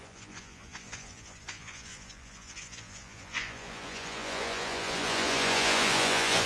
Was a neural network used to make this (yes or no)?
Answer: yes